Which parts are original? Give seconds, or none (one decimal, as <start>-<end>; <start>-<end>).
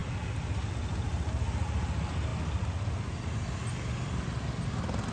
0.0-5.1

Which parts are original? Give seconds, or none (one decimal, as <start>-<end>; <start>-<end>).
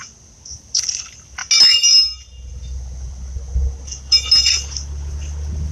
0.0-5.7